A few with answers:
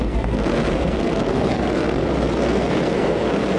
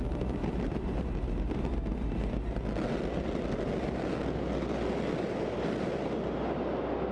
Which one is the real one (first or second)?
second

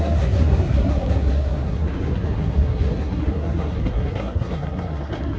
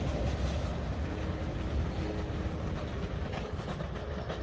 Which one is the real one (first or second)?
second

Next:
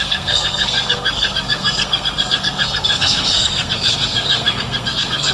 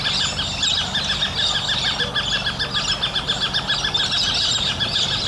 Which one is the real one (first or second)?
second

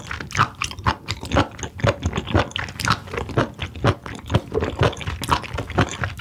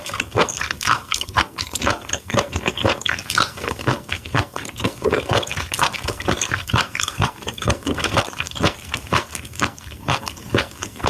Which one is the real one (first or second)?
first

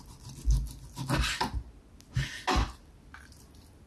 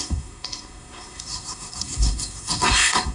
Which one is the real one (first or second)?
first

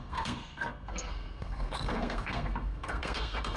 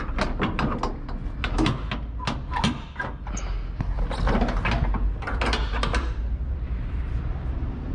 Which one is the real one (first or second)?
second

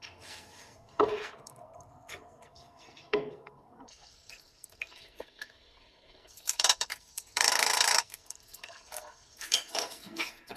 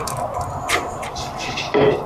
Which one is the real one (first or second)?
second